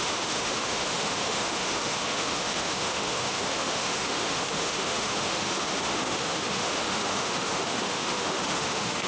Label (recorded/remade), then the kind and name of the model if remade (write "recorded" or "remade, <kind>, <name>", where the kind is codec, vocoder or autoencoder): remade, autoencoder, DAC-VAE